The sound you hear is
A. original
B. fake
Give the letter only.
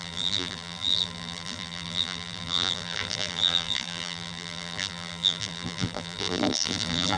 B